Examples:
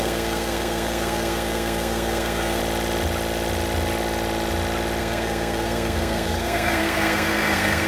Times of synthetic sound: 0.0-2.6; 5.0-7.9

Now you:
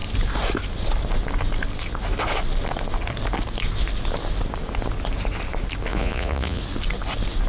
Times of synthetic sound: 5.9-6.6

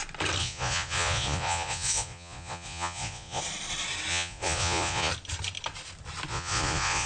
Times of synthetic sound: 0.4-3.4; 4.1-5.1; 6.3-7.1

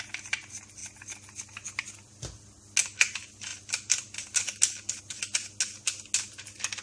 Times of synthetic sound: none

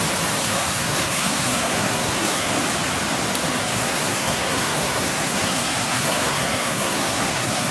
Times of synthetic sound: 0.4-2.5; 3.6-7.7